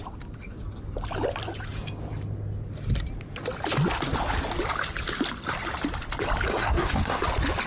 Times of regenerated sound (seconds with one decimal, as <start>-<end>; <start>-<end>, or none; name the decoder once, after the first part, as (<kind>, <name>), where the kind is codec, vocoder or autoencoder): 6.5-7.2 (codec, SNAC)